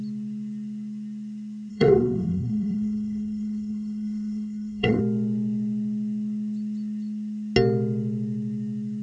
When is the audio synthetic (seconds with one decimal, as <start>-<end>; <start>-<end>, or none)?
1.7-5.0